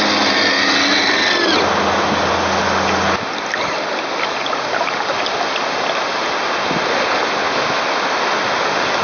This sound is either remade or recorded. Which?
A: recorded